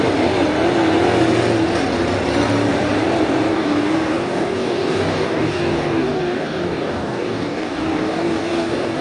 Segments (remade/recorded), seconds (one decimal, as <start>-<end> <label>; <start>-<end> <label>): 0.0-3.5 recorded; 3.5-9.0 remade